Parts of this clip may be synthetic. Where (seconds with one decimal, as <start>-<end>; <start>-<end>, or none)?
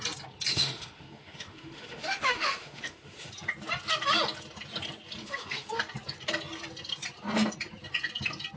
0.5-3.3; 5.2-5.7